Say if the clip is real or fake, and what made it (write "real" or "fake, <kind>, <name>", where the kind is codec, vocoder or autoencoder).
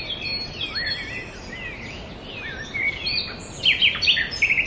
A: real